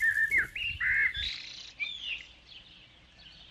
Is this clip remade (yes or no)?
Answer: no